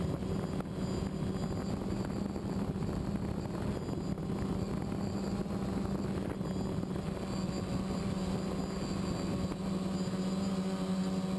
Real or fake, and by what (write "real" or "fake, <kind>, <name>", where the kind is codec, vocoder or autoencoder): real